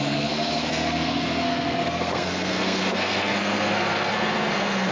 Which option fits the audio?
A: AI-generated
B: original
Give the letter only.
A